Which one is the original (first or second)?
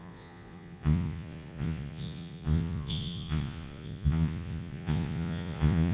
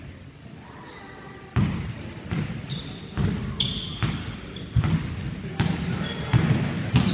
second